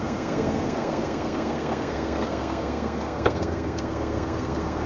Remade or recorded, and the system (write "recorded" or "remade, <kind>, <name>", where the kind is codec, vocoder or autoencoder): remade, codec, SNAC